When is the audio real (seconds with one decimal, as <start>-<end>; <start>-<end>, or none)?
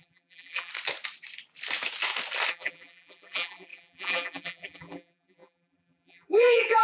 0.7-2.5